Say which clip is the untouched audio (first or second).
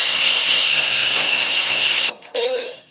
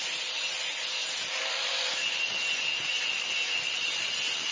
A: second